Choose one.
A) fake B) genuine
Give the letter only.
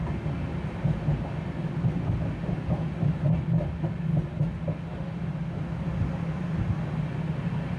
B